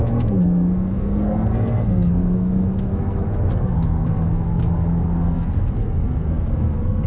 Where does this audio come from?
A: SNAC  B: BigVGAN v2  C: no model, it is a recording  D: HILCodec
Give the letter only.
A